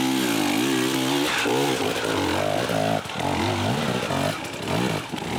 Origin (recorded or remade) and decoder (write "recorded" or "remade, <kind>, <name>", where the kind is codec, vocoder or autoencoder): recorded